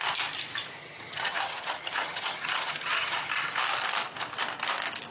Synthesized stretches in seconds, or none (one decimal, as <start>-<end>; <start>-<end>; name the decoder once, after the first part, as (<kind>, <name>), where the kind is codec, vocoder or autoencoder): 0.8-3.3 (vocoder, HiFi-GAN)